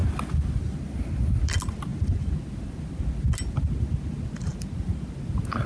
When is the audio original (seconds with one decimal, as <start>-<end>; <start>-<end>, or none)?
0.0-5.7